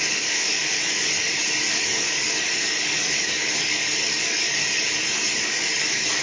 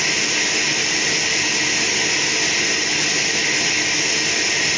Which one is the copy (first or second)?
first